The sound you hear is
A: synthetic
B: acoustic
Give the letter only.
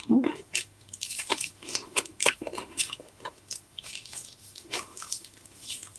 A